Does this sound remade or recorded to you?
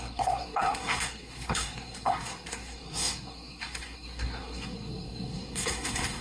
remade